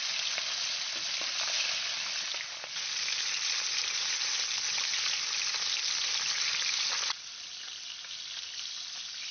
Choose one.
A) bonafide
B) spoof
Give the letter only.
A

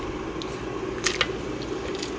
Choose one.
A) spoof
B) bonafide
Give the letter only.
B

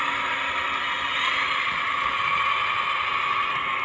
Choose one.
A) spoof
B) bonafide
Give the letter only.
B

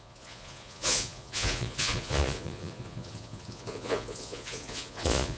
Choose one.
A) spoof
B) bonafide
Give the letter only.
A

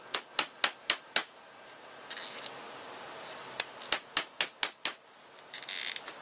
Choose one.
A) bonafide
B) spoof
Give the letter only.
A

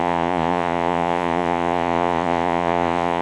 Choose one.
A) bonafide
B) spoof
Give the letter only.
B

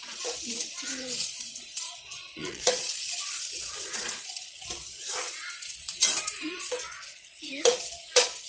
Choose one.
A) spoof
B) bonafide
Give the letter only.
A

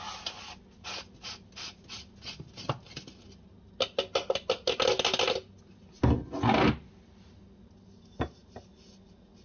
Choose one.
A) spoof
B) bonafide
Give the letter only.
B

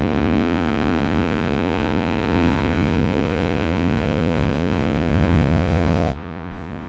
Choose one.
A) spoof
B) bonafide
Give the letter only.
A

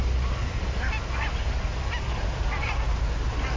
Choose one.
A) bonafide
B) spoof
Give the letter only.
A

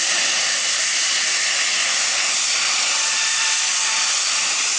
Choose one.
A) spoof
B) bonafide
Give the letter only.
B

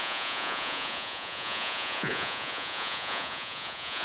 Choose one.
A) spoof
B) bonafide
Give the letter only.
A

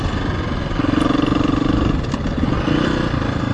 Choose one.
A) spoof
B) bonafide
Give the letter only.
B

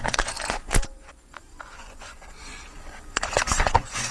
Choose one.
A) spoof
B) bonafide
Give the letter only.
A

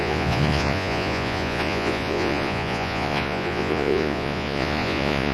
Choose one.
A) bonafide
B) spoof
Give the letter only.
B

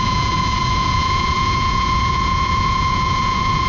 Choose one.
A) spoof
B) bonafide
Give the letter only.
A